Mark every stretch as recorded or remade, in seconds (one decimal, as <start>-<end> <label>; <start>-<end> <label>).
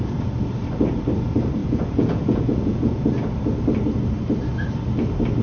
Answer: 0.0-1.6 recorded; 1.6-3.1 remade; 3.1-5.4 recorded